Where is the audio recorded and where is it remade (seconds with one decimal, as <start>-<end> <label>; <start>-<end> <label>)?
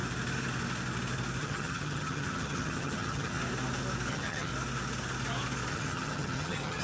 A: 0.0-1.4 recorded; 1.4-3.4 remade; 3.4-4.1 recorded; 4.1-4.5 remade; 4.5-5.7 recorded; 5.7-6.8 remade